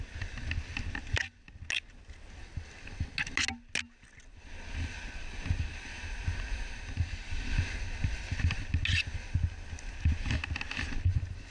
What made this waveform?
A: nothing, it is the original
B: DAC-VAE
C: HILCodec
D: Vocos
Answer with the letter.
A